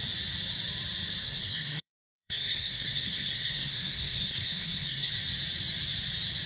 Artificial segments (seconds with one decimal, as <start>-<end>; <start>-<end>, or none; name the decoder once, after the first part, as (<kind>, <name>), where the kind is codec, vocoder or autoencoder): 1.2-5.1 (codec, SNAC)